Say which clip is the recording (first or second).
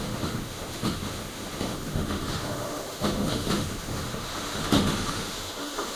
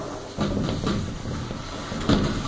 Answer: second